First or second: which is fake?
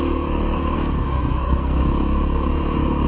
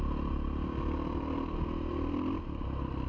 first